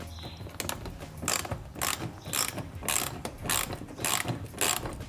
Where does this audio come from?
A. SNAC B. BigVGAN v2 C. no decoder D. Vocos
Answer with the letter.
C